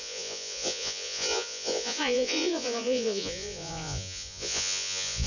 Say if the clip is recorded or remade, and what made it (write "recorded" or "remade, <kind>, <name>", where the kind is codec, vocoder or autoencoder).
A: remade, vocoder, Vocos